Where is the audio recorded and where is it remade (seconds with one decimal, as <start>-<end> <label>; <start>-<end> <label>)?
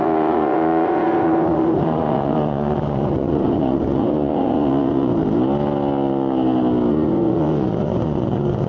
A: 0.0-5.1 remade; 5.1-6.9 recorded; 6.9-8.7 remade